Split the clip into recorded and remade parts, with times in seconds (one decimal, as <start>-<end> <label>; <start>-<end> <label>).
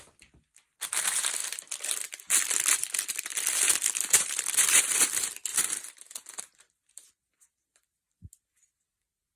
0.0-1.4 remade; 1.4-2.4 recorded; 2.4-5.5 remade; 5.5-6.4 recorded; 6.4-9.4 remade